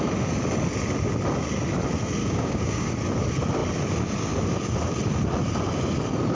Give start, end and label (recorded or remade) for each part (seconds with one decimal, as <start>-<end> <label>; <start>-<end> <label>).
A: 0.0-2.2 recorded; 2.2-2.9 remade; 2.9-6.3 recorded